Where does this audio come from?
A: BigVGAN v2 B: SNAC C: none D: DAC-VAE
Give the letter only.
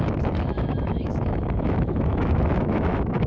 D